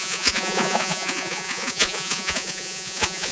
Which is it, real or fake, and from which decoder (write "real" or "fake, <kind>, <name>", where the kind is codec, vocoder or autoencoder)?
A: fake, vocoder, Vocos